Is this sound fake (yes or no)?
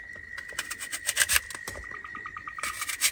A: no